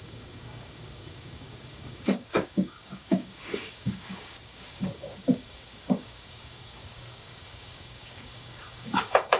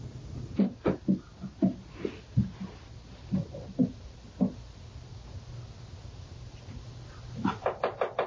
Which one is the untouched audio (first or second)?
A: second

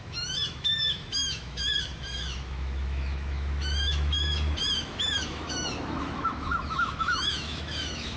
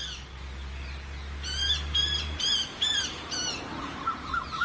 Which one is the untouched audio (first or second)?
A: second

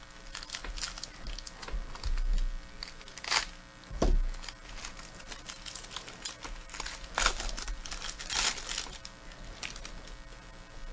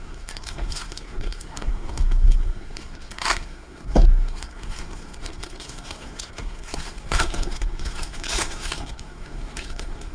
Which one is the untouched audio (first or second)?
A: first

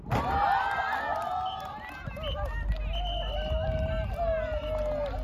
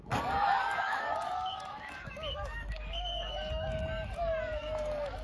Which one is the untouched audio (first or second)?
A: first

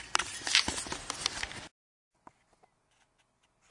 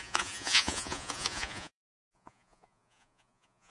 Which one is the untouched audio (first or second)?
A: first